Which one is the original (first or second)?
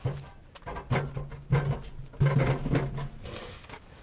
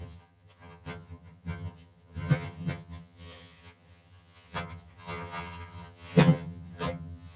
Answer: first